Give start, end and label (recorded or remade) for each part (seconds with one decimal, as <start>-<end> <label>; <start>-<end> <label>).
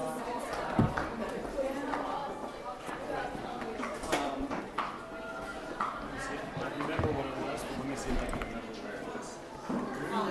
0.0-4.6 remade; 4.6-5.5 recorded; 5.5-6.4 remade; 6.4-10.3 recorded